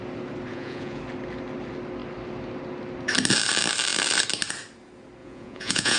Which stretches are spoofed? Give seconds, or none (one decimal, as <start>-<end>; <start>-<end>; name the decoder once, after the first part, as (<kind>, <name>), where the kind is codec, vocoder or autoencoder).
0.5-1.0 (vocoder, Vocos); 5.2-6.0